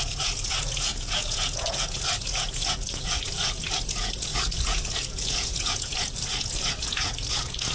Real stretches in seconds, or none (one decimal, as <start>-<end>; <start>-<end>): none